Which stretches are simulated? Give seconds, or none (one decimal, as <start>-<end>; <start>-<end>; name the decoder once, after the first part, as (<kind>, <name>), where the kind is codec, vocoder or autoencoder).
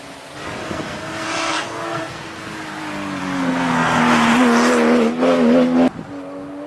0.6-2.4 (codec, SNAC); 3.2-4.0